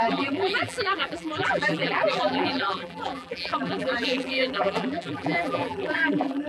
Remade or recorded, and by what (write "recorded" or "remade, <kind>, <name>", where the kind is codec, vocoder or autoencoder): remade, vocoder, BigVGAN v2